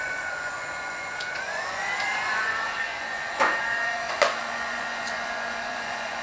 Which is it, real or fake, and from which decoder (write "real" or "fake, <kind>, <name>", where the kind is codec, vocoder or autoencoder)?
fake, vocoder, Vocos